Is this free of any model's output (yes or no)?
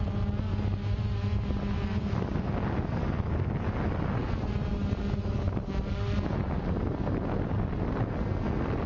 yes